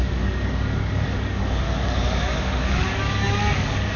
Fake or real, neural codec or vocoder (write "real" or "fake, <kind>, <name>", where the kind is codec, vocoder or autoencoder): fake, codec, DAC